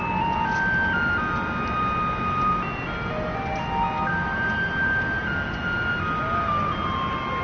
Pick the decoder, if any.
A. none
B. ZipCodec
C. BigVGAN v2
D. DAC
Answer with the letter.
A